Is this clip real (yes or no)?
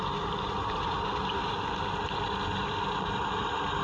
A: yes